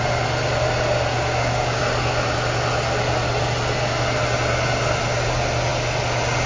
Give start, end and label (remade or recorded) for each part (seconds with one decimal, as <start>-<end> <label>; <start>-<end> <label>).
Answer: 0.0-1.1 recorded; 1.1-1.8 remade; 1.8-6.5 recorded